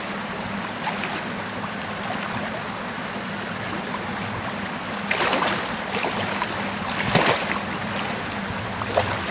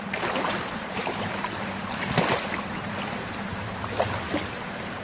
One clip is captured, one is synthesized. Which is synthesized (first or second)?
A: second